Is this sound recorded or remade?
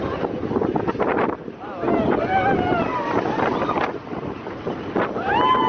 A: recorded